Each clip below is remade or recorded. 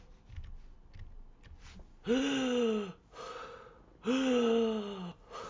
recorded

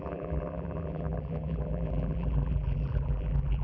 remade